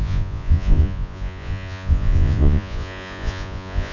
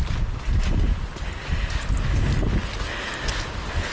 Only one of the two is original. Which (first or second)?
second